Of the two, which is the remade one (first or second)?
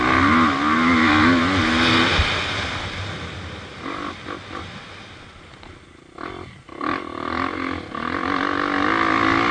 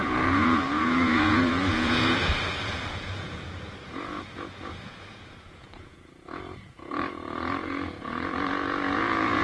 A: second